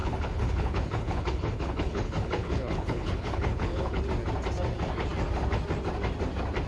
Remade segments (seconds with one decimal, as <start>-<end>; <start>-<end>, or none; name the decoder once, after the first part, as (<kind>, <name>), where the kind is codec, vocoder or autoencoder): 0.0-4.0 (codec, HILCodec)